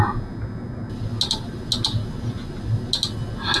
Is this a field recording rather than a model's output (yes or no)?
yes